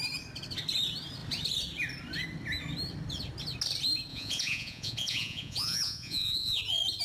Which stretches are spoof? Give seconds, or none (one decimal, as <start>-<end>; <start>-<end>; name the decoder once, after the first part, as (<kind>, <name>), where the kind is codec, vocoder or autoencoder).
4.1-6.6 (vocoder, Vocos)